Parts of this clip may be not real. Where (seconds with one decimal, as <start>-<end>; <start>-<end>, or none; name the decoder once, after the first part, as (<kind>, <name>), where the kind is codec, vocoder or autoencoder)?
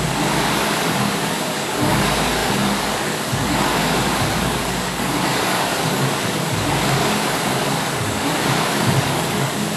0.0-9.8 (codec, DAC)